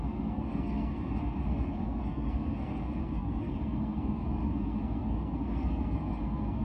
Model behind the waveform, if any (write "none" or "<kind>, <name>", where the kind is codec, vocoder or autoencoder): codec, SNAC